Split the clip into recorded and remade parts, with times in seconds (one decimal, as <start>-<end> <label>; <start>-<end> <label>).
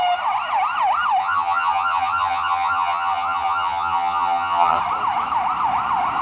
0.0-1.2 recorded; 1.2-4.8 remade; 4.8-6.2 recorded